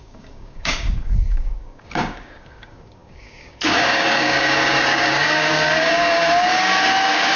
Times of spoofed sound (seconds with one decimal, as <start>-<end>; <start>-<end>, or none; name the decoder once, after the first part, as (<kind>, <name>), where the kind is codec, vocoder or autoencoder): 0.0-7.4 (codec, DAC)